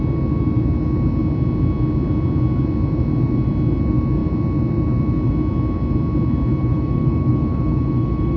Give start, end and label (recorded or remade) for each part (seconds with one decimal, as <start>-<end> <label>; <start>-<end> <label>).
0.0-6.6 recorded; 6.6-8.4 remade